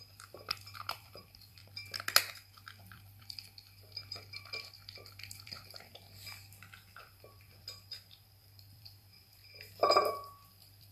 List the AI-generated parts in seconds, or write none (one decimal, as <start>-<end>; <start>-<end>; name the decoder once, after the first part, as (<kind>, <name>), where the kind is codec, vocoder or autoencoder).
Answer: 0.0-1.6 (vocoder, BigVGAN v2); 2.8-5.9; 7.0-9.4; 10.5-10.9